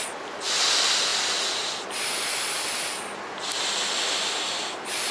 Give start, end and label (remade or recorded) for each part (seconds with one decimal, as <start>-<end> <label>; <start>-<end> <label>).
0.0-5.1 recorded